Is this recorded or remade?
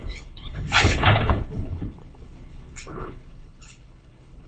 remade